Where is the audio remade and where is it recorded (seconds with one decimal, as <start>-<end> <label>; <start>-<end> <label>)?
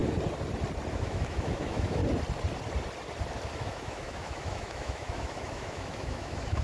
0.0-0.9 recorded; 0.9-2.0 remade; 2.0-3.6 recorded; 3.6-6.6 remade